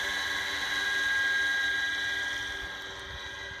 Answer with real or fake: real